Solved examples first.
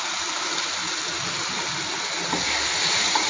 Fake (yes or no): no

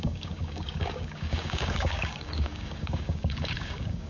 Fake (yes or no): yes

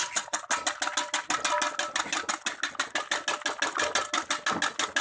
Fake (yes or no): no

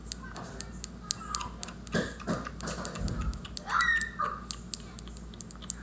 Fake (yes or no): no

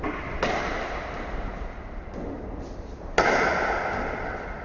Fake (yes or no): no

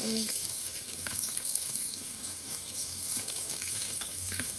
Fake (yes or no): yes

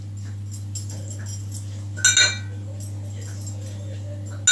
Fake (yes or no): no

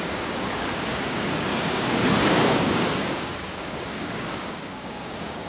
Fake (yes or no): yes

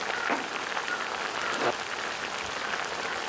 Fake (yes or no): no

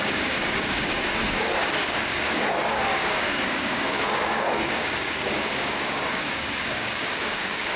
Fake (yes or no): yes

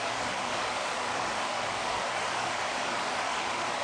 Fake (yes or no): yes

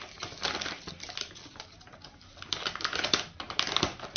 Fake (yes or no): no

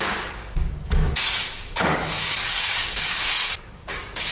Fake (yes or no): yes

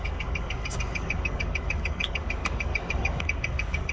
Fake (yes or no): yes